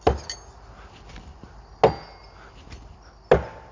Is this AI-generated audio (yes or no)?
no